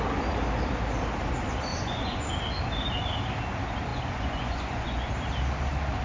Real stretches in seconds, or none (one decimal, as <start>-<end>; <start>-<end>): 0.0-1.7; 2.3-3.9; 5.1-6.0